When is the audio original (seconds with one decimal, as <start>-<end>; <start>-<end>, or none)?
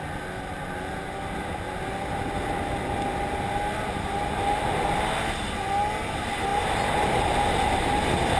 0.0-8.4